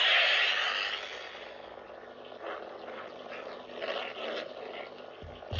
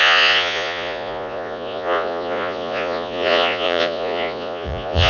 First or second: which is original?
first